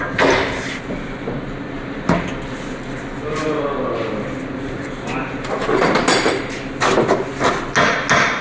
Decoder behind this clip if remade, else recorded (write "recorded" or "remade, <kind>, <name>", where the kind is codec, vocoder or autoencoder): recorded